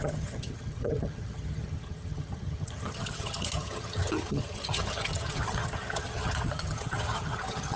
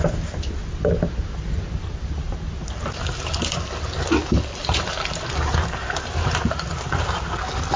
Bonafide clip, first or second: second